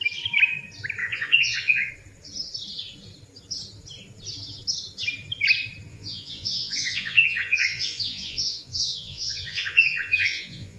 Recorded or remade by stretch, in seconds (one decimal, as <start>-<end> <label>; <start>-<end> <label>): 0.0-1.0 recorded; 1.0-1.9 remade; 1.9-5.9 recorded; 5.9-10.8 remade